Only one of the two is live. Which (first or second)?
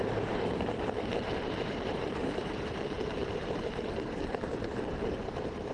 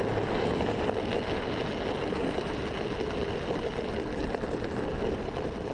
second